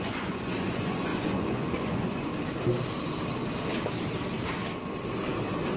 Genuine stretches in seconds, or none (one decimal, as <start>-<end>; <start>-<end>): 2.3-5.8